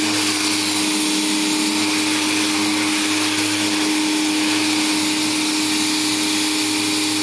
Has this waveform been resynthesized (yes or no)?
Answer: no